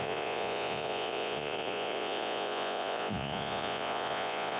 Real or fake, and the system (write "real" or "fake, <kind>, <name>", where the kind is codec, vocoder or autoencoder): fake, vocoder, Vocos